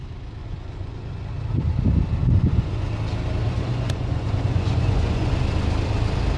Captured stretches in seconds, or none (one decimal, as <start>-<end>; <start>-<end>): 0.0-0.4; 1.3-2.2; 2.9-3.4; 5.3-6.4